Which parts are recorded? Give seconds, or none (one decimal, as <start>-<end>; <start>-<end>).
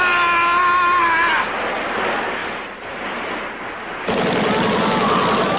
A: 0.0-5.6